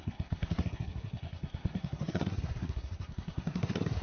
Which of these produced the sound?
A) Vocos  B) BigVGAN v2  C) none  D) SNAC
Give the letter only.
D